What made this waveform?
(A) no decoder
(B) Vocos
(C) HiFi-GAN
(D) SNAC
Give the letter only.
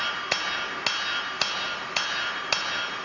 A